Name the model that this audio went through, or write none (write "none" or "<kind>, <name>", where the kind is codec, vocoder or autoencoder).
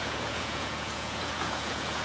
vocoder, Vocos